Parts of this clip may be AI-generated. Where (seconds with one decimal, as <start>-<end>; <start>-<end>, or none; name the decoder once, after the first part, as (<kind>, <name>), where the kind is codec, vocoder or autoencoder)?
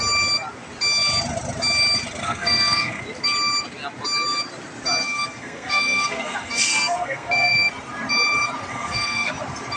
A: 2.2-3.0 (codec, SNAC); 5.0-7.7; 8.7-9.3